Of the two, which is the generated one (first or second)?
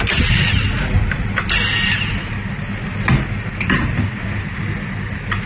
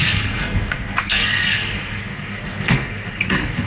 second